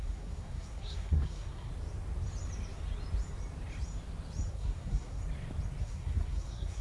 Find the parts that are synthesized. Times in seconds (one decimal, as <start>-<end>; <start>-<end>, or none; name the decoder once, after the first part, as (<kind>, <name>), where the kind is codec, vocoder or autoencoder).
0.0-1.7 (codec, SNAC); 4.5-5.2; 5.8-6.8